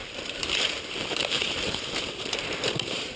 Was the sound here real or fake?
fake